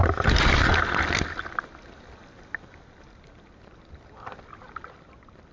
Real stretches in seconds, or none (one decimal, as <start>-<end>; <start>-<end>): 0.0-5.5

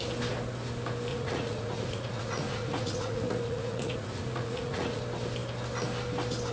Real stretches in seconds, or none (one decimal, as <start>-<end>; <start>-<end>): 0.0-1.1; 5.0-6.5

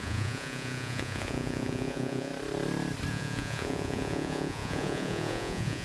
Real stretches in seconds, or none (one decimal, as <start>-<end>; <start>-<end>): 2.3-3.1

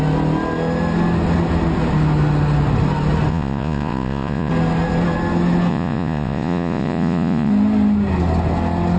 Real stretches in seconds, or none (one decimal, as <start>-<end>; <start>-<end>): 0.0-3.3; 4.5-5.7; 7.5-9.0

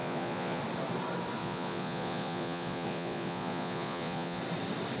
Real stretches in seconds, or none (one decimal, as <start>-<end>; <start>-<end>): 0.6-1.4; 4.4-5.0

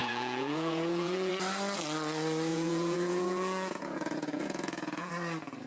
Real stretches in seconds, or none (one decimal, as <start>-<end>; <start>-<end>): 1.3-2.5; 5.1-5.7

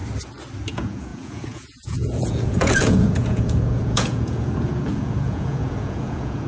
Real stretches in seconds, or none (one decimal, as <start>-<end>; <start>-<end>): 0.0-0.7

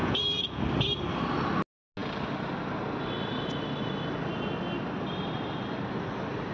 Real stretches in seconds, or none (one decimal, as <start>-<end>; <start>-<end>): 0.6-6.5